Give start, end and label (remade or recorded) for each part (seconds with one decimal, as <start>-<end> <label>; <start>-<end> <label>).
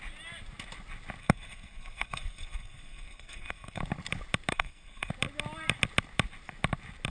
0.0-1.2 recorded; 1.2-3.8 remade; 3.8-4.5 recorded; 4.5-5.1 remade; 5.1-7.1 recorded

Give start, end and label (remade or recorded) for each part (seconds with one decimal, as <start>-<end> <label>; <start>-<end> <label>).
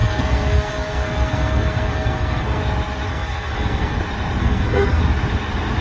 0.0-2.6 remade; 2.6-3.1 recorded; 3.1-4.0 remade; 4.0-4.4 recorded; 4.4-5.0 remade; 5.0-5.8 recorded